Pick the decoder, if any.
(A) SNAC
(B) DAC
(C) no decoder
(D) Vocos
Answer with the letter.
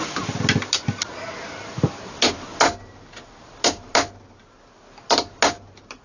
C